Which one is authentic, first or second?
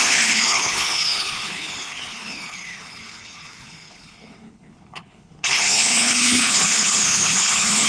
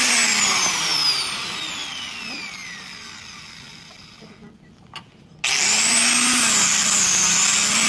second